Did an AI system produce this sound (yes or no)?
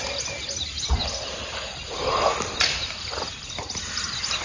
no